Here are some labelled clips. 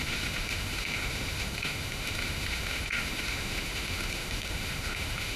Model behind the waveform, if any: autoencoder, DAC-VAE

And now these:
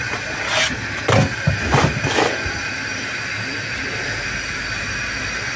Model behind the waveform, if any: none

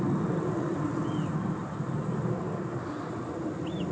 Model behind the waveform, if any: none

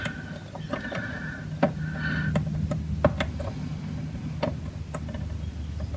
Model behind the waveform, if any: none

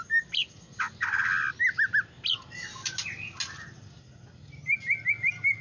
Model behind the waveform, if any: none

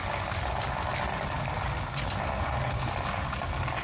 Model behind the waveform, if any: none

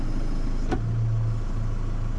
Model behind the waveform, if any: none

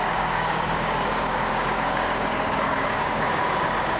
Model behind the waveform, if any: codec, DAC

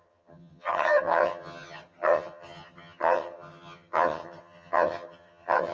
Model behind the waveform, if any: vocoder, HiFi-GAN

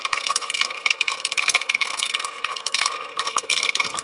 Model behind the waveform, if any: codec, SNAC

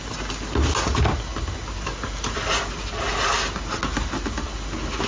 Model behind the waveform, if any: none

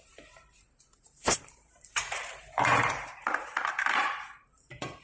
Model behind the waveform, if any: vocoder, BigVGAN v2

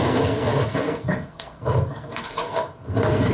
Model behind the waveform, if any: codec, SNAC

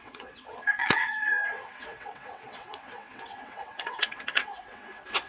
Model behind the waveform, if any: vocoder, WaveNeXt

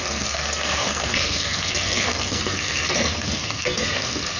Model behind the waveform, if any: codec, SNAC